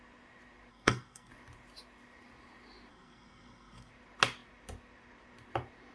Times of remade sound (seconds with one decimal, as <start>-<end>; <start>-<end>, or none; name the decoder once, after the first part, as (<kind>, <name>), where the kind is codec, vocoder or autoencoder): 0.7-1.3 (codec, SNAC); 2.9-3.9